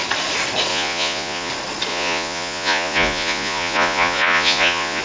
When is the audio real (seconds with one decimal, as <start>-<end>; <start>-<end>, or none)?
0.0-0.7; 1.5-1.9